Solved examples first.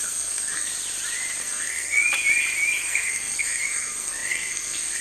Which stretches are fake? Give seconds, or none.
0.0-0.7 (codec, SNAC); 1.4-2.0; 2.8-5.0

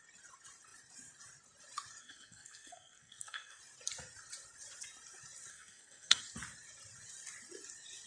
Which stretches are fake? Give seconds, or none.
2.0-3.6 (codec, SNAC); 5.5-6.2

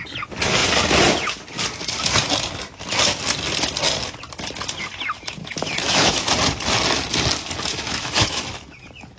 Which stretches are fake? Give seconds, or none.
5.4-6.3 (autoencoder, DAC-VAE); 7.7-8.4

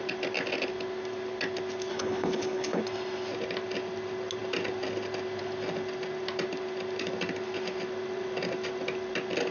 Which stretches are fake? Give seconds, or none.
1.9-2.8 (codec, HILCodec)